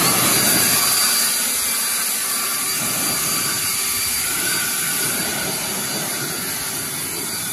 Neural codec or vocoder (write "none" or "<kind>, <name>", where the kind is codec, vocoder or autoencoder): none